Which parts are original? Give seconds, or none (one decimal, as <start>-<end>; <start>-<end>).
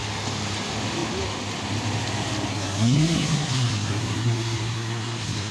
0.0-2.5